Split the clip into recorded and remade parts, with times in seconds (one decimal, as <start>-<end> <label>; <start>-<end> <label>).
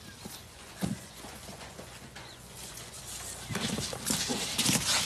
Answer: 0.0-0.4 recorded; 0.4-3.0 remade; 3.0-5.1 recorded